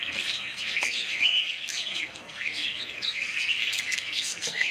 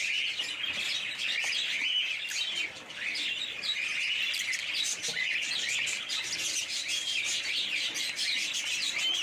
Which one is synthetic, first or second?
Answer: first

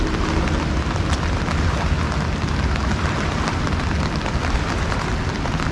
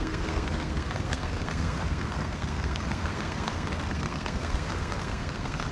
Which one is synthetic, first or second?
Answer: second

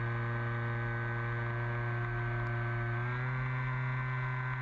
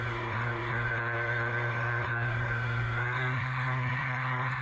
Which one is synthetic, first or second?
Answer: second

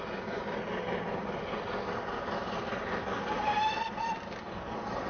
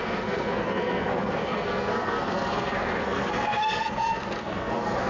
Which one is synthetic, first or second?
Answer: second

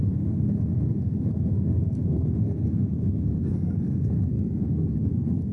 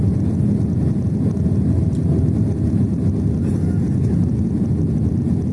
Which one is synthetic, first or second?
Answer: first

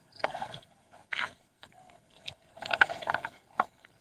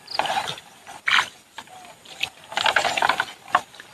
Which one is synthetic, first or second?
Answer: first